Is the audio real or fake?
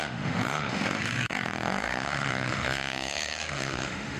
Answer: fake